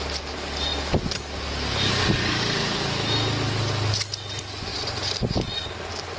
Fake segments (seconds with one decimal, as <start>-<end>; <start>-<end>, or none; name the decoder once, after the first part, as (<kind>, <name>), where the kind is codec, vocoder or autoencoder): none